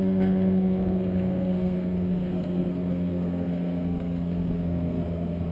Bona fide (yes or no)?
no